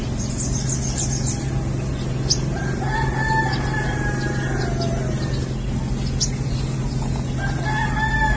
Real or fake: real